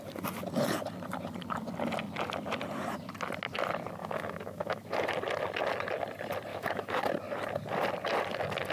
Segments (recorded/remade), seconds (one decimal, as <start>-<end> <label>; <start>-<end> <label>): 0.0-4.0 recorded; 4.0-4.9 remade; 4.9-6.5 recorded; 6.5-7.0 remade; 7.0-8.7 recorded